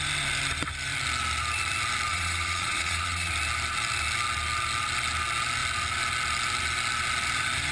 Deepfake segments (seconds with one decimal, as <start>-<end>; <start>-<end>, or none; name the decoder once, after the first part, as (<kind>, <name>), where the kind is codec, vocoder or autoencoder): 2.1-3.3 (vocoder, Vocos)